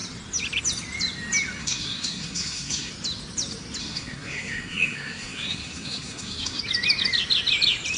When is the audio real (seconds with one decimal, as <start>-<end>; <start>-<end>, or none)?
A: 0.0-1.6; 2.9-3.8; 6.6-8.0